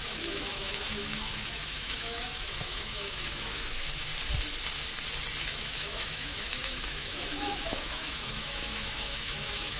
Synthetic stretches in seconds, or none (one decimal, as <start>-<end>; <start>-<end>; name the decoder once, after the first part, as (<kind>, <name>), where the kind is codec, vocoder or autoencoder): 0.0-4.1 (autoencoder, DAC-VAE); 5.4-9.8